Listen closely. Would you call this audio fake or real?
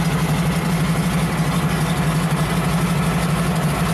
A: real